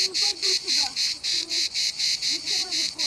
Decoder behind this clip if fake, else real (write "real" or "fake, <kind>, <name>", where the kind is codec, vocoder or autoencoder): fake, vocoder, Vocos